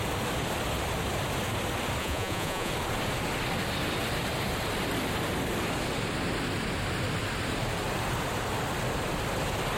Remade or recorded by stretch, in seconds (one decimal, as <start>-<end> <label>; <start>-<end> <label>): 0.0-2.0 recorded; 2.0-2.7 remade; 2.7-9.8 recorded